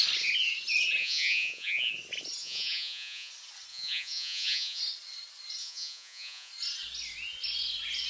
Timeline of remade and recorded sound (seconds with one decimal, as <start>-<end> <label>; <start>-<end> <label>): 0.0-1.0 recorded; 1.0-1.9 remade; 1.9-2.4 recorded; 2.4-3.3 remade; 3.3-3.7 recorded; 3.7-4.8 remade; 4.8-5.6 recorded; 5.6-6.5 remade; 6.5-8.1 recorded